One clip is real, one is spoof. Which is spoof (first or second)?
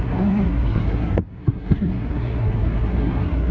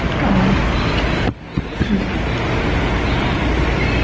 first